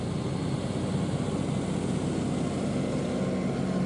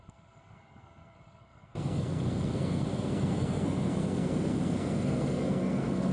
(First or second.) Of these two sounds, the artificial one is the second